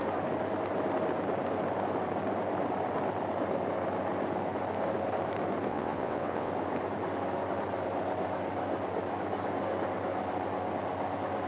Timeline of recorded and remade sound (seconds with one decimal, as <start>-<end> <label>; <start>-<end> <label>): 0.0-5.7 recorded; 5.7-6.5 remade; 6.5-11.5 recorded